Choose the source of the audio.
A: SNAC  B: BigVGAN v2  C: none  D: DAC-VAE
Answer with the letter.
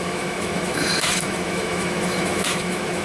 D